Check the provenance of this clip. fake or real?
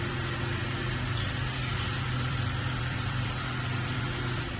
fake